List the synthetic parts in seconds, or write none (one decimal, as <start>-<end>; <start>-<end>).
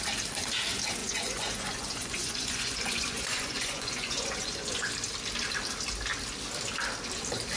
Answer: 1.0-4.9